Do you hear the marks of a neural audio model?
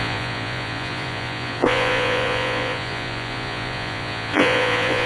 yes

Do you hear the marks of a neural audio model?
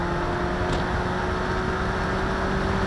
no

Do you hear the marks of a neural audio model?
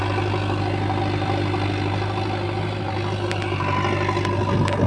no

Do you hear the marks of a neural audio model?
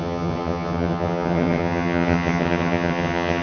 yes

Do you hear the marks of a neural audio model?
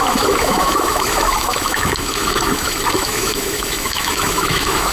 yes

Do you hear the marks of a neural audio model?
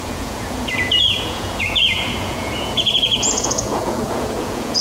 yes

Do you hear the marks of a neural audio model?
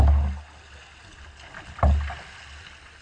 no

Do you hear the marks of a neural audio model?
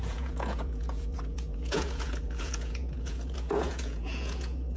yes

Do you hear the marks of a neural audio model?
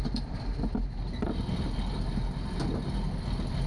no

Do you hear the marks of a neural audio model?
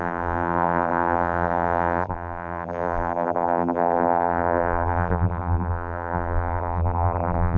yes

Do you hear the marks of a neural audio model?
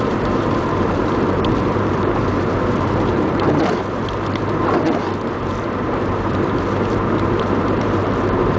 yes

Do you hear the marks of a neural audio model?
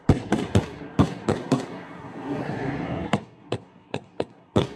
yes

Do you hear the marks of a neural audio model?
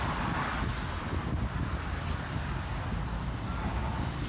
no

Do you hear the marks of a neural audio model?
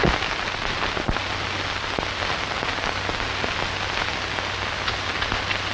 no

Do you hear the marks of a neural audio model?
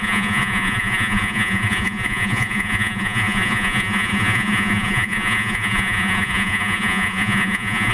yes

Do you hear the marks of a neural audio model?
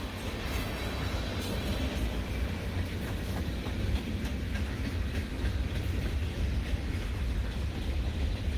no